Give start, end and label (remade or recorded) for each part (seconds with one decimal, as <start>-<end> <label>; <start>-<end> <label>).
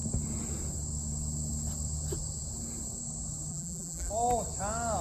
0.0-3.5 recorded; 3.5-4.1 remade; 4.1-5.0 recorded